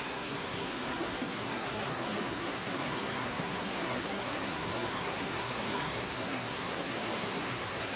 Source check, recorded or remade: remade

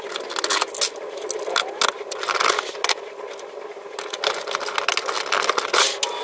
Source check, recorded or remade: recorded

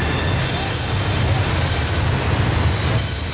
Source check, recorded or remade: recorded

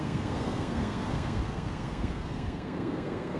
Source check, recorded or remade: remade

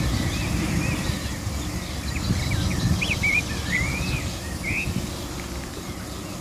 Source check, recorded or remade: recorded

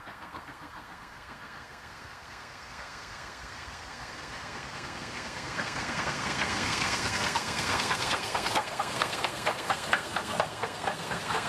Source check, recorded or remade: remade